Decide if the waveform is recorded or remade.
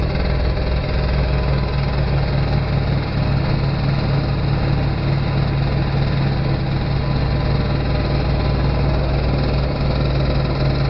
recorded